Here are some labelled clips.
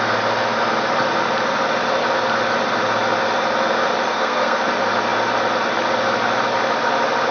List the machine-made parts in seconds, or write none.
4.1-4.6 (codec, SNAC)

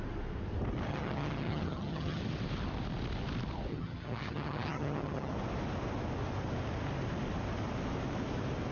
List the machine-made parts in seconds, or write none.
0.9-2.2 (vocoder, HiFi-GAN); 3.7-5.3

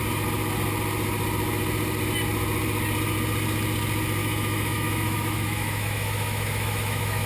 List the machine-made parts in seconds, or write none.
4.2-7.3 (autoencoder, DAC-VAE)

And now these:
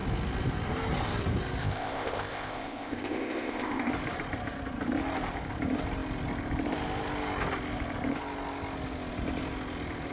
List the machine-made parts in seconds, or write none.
1.6-3.9 (codec, ZipCodec)